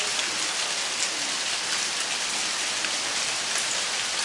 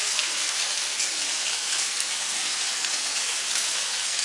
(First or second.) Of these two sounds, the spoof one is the second